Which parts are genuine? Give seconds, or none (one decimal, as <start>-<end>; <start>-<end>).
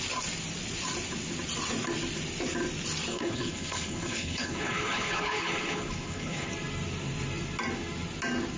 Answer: 0.0-3.1; 6.5-8.6